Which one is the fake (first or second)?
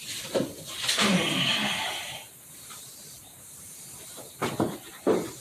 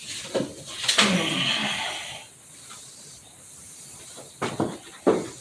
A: first